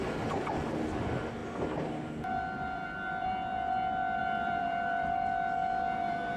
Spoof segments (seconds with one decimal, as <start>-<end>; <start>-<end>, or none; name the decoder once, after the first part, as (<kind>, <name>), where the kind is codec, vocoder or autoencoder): 4.2-5.3 (vocoder, BigVGAN v2)